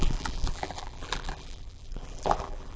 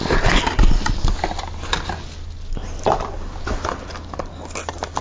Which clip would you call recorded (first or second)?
second